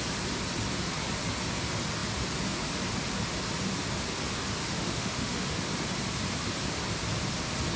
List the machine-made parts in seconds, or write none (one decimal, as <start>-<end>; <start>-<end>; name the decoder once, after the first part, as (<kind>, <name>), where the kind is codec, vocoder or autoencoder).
4.6-5.6 (autoencoder, DAC-VAE)